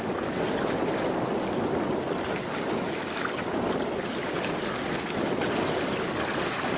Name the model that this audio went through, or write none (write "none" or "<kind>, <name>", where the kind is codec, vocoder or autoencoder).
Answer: none